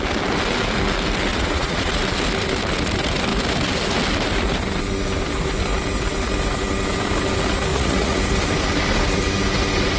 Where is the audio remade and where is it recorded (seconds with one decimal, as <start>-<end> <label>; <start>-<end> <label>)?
0.0-1.3 recorded; 1.3-2.0 remade; 2.0-7.7 recorded; 7.7-8.2 remade; 8.2-10.0 recorded